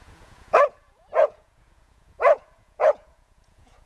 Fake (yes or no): yes